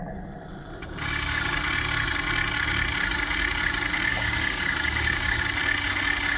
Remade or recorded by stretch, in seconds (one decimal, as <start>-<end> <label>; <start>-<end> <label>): 0.0-0.8 recorded; 0.8-1.6 remade; 1.6-4.1 recorded; 4.1-5.4 remade; 5.4-6.4 recorded